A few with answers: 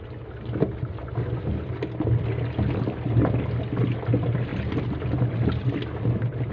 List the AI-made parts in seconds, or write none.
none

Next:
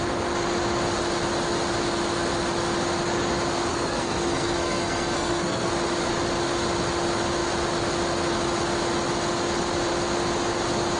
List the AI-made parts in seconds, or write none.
3.7-5.7 (codec, SNAC)